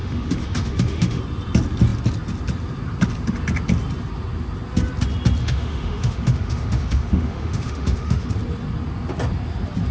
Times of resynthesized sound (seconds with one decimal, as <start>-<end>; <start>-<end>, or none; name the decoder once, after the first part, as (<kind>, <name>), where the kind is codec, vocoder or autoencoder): 0.0-1.2 (autoencoder, DAC-VAE); 5.4-8.3